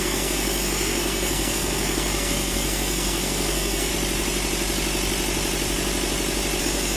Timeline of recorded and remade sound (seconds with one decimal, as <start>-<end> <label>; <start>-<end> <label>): 0.0-3.9 remade; 3.9-6.6 recorded; 6.6-7.0 remade

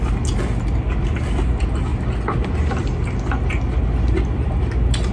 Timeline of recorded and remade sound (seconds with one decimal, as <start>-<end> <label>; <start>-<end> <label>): 0.0-5.1 recorded

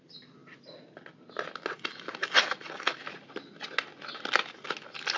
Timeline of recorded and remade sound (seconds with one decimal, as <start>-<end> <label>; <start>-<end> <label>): 0.0-5.2 recorded

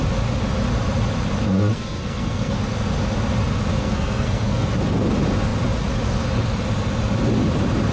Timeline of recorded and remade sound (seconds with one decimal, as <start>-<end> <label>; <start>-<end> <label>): 0.0-1.7 recorded; 1.7-2.5 remade; 2.5-3.7 recorded; 3.7-4.7 remade; 4.7-7.9 recorded